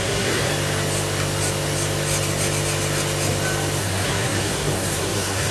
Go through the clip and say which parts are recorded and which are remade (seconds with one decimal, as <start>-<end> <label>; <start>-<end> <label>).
0.0-0.5 remade; 0.5-3.8 recorded; 3.8-5.5 remade